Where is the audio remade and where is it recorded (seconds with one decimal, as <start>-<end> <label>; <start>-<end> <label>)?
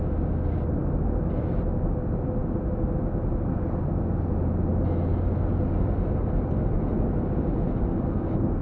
0.0-8.6 recorded